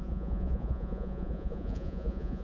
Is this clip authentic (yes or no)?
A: no